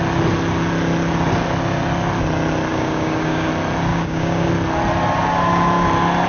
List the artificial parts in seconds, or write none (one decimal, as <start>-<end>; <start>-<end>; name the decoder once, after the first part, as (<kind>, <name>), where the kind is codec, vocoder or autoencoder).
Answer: 2.7-3.5 (codec, DAC); 3.9-4.5